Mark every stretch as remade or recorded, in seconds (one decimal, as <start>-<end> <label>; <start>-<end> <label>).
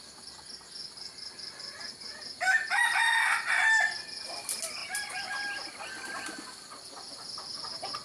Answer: 0.0-8.0 recorded